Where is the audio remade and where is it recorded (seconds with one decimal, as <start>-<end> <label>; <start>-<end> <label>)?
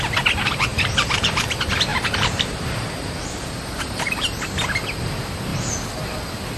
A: 0.0-0.7 recorded; 0.7-1.4 remade; 1.4-1.9 recorded; 1.9-4.4 remade; 4.4-6.6 recorded